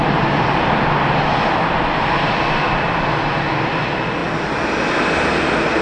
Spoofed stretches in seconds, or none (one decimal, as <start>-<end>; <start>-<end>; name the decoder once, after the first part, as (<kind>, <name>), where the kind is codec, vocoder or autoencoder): none